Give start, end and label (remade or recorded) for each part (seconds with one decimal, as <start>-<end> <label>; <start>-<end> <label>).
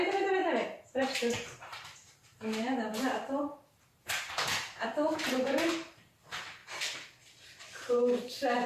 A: 0.0-0.4 remade; 0.4-0.9 recorded; 0.9-6.6 remade; 6.6-7.5 recorded; 7.5-8.7 remade